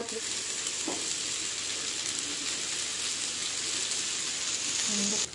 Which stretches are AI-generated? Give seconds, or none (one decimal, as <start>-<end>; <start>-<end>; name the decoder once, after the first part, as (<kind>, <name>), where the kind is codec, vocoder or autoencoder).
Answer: none